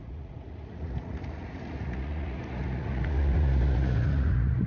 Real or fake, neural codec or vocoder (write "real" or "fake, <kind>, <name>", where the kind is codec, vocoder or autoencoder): fake, vocoder, Vocos